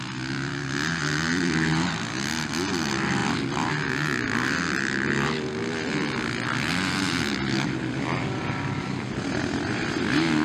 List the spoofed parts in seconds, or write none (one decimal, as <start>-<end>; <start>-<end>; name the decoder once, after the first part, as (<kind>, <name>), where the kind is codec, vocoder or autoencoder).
none